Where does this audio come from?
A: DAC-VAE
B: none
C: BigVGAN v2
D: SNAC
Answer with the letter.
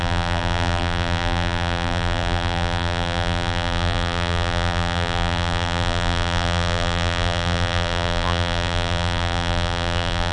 C